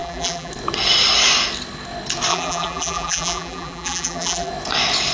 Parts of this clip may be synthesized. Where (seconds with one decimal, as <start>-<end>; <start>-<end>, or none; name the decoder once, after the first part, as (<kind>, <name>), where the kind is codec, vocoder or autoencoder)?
0.0-0.5 (vocoder, BigVGAN v2); 2.3-4.5